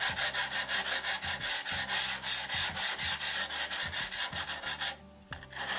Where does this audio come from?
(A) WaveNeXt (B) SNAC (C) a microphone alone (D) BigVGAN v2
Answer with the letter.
C